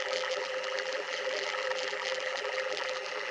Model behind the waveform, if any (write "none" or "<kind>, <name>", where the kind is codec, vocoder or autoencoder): vocoder, BigVGAN v2